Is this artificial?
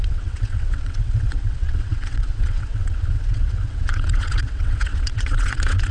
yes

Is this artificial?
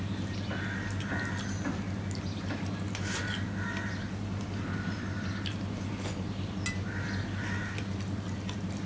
no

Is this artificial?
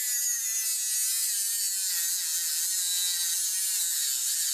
no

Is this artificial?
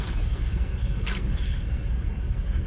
yes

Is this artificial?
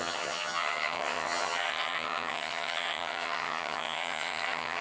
yes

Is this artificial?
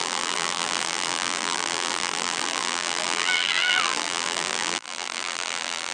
yes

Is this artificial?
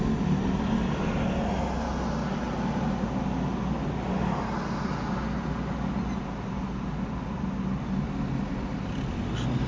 no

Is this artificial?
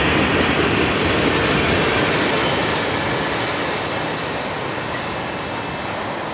no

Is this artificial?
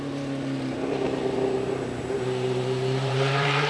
yes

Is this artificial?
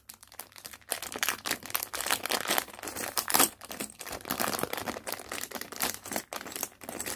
yes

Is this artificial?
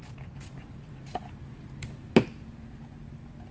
no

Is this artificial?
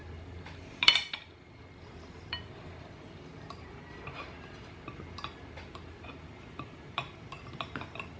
yes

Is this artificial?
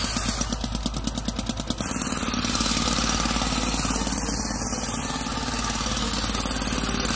no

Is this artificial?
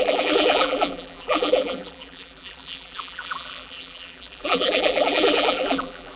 yes